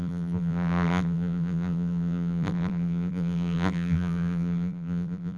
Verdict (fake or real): fake